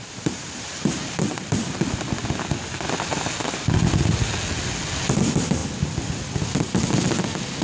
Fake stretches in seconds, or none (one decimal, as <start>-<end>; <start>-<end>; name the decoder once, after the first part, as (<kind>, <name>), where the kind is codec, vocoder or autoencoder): 0.0-1.2 (vocoder, BigVGAN v2)